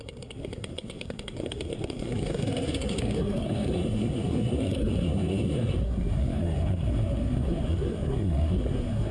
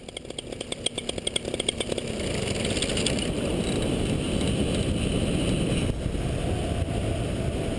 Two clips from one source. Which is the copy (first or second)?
first